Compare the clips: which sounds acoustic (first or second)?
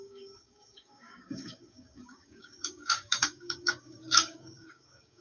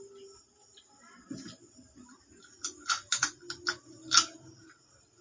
second